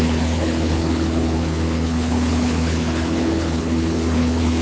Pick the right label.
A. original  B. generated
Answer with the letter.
B